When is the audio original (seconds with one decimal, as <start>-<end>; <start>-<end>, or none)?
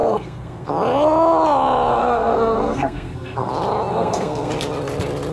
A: 0.7-1.9; 3.5-3.9; 4.5-5.3